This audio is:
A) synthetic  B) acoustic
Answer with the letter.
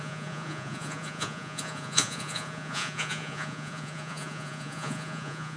A